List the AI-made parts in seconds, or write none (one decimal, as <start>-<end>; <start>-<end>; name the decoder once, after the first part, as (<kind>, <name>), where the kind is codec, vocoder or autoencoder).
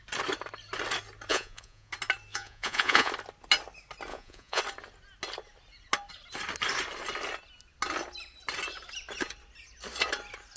1.3-1.9 (vocoder, Vocos); 2.3-3.1; 4.1-4.6